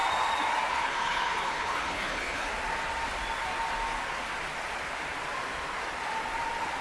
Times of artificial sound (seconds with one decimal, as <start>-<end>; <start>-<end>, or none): 0.7-2.5